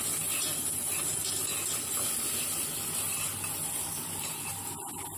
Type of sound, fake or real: real